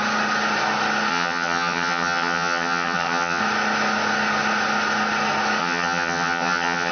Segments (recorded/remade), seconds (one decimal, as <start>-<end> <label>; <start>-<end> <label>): 0.0-1.1 recorded; 1.1-3.4 remade; 3.4-5.6 recorded; 5.6-6.9 remade